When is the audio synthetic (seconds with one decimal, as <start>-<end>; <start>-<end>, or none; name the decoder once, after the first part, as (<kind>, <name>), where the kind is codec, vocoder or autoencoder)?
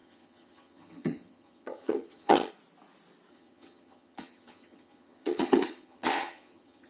0.0-2.5 (vocoder, HiFi-GAN); 3.3-6.9